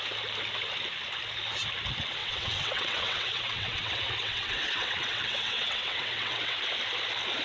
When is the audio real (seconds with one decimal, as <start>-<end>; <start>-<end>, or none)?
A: 0.0-2.2; 6.6-7.4

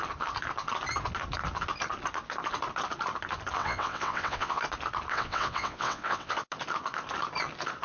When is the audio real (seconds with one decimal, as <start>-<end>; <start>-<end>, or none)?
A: 0.0-3.6; 4.6-5.1; 6.4-7.8

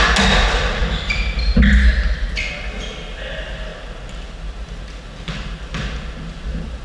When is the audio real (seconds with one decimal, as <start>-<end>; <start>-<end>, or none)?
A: 0.0-6.8

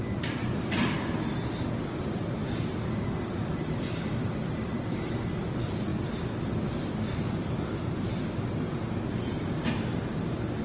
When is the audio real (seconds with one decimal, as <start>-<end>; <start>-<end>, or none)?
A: 0.0-10.6